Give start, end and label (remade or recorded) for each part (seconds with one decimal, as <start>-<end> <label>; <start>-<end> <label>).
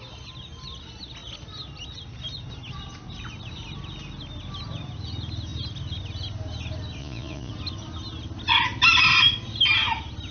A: 0.0-7.0 recorded; 7.0-7.5 remade; 7.5-10.3 recorded